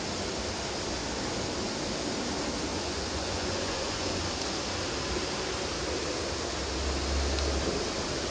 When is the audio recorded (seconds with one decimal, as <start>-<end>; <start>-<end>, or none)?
0.0-2.7; 4.2-8.3